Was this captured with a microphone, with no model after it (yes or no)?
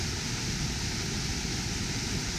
yes